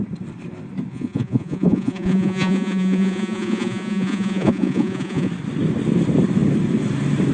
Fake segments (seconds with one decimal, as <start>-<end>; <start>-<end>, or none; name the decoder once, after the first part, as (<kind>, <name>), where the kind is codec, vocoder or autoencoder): 0.9-5.3 (vocoder, Vocos)